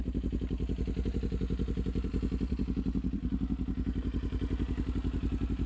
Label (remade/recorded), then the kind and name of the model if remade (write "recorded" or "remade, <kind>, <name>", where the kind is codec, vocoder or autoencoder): recorded